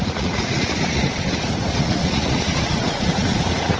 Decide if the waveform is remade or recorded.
remade